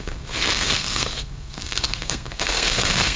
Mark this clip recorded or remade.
remade